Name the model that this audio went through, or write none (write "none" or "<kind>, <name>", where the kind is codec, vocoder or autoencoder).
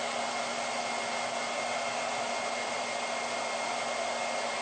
none